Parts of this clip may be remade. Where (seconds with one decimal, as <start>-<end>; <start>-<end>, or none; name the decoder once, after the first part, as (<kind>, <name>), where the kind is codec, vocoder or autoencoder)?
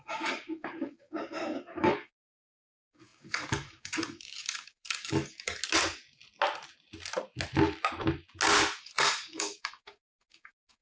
0.0-5.6 (codec, DAC); 8.8-10.8